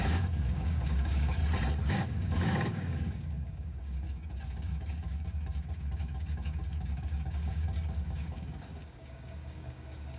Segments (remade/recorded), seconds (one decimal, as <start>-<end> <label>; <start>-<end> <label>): 0.0-1.4 remade; 1.4-1.9 recorded; 1.9-10.2 remade